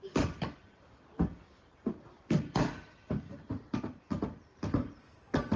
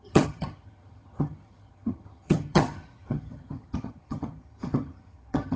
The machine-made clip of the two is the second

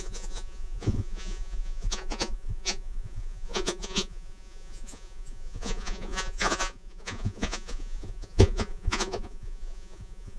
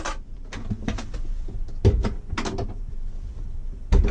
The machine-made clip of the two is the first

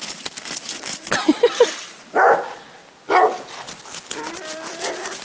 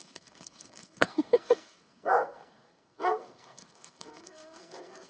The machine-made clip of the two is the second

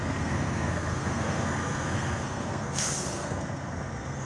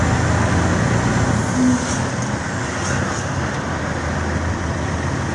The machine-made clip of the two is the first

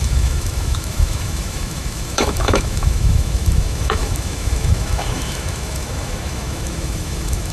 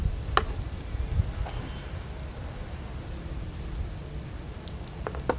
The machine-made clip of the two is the first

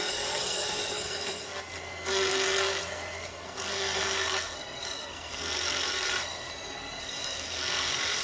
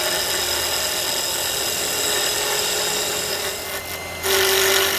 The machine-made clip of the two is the first